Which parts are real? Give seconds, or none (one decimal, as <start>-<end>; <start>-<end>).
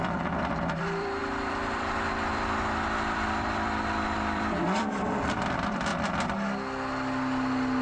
5.9-7.8